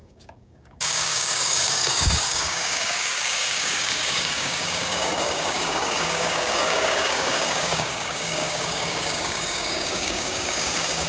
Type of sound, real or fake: fake